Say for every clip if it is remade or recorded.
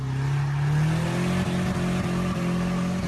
recorded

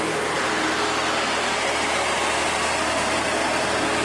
recorded